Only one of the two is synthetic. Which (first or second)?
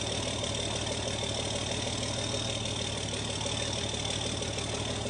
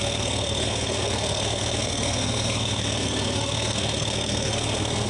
second